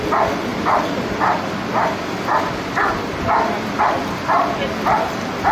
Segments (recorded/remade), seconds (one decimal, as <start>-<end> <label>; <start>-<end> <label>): 0.0-5.5 recorded